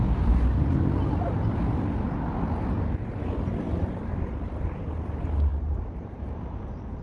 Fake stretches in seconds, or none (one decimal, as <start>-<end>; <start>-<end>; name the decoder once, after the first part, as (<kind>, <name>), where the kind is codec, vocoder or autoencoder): 5.5-7.0 (vocoder, BigVGAN v2)